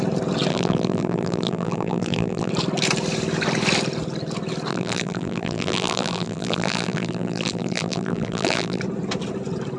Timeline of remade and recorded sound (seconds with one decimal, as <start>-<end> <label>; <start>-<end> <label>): 0.0-0.5 recorded; 0.5-2.5 remade; 2.5-4.7 recorded; 4.7-8.8 remade; 8.8-9.8 recorded